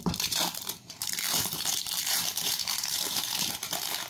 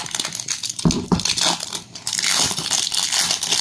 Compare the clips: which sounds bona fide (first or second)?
second